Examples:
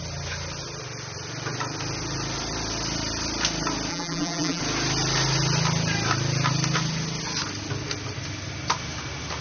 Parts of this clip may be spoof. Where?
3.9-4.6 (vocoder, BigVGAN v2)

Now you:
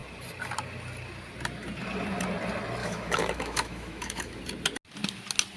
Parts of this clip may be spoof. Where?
2.8-4.4 (autoencoder, DAC-VAE)

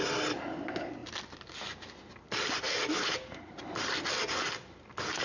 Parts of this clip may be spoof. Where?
none

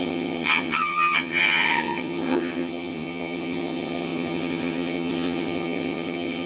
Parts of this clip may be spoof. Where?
0.0-6.5 (vocoder, HiFi-GAN)

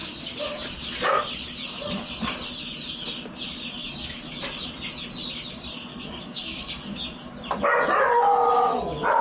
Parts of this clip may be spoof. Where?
3.8-4.3 (codec, DAC); 5.9-6.7

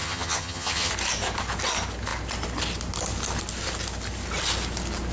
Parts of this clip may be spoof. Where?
0.0-0.9 (vocoder, HiFi-GAN)